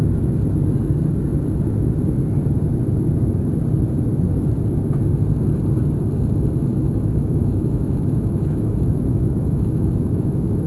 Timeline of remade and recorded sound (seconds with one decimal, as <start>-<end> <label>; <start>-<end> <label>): 0.0-6.7 recorded; 6.7-10.7 remade